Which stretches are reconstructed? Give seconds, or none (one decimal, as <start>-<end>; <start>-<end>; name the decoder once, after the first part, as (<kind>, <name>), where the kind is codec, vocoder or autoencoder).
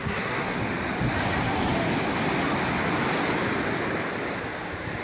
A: 0.0-0.6 (codec, SNAC)